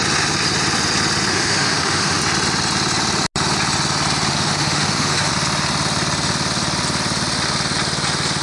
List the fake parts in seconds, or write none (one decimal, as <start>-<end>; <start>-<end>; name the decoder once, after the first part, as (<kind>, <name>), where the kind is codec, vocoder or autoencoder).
1.3-2.2 (autoencoder, DAC-VAE); 4.3-5.3